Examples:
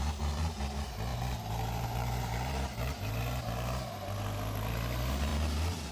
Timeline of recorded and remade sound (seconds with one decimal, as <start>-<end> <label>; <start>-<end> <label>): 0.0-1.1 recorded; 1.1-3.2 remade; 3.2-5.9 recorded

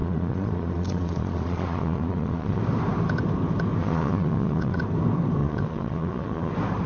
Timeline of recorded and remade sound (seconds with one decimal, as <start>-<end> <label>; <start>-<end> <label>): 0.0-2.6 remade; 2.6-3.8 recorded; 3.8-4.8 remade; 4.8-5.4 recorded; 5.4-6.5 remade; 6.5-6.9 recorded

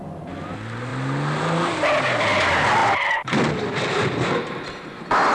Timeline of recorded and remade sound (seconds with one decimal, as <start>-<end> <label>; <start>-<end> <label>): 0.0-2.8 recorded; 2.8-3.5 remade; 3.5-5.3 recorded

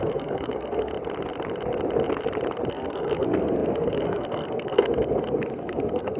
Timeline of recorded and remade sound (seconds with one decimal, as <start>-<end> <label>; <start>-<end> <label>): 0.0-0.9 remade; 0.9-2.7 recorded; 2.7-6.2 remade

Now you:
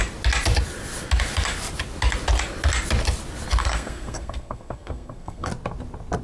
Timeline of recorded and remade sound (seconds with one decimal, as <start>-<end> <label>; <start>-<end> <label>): 0.0-3.6 recorded; 3.6-5.5 remade; 5.5-6.2 recorded

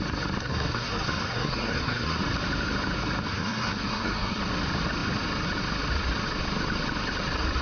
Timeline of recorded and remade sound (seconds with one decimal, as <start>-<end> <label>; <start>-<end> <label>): 0.0-0.4 recorded; 0.4-2.2 remade; 2.2-3.3 recorded; 3.3-4.4 remade; 4.4-7.6 recorded

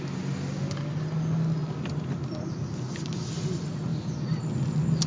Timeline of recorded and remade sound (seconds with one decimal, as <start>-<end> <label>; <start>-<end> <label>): 0.0-5.1 recorded